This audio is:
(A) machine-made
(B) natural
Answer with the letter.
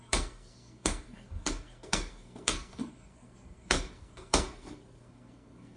A